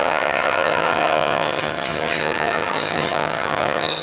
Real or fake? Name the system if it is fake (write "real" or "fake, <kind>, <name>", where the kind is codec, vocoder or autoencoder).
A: fake, vocoder, HiFi-GAN